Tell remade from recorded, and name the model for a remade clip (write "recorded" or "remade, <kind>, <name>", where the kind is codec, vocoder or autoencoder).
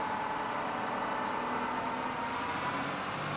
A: recorded